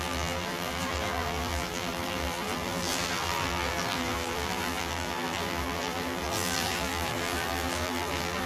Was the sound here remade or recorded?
remade